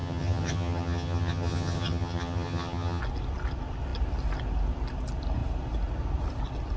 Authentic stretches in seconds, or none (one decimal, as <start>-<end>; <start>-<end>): 3.0-6.8